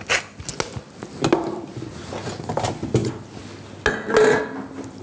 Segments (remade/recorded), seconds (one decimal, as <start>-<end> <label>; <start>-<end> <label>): 0.0-5.0 recorded